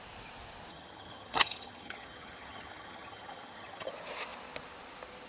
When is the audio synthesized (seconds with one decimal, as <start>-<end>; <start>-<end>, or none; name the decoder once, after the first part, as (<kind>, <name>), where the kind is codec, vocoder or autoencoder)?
0.7-3.9 (vocoder, HiFi-GAN)